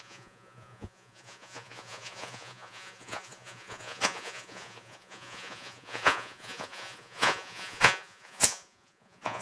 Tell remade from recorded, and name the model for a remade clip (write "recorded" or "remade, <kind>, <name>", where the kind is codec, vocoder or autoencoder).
remade, vocoder, Vocos